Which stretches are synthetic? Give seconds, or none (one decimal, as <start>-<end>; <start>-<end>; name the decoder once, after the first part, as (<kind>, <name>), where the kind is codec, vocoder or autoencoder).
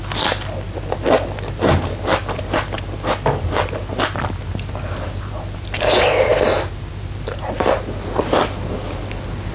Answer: none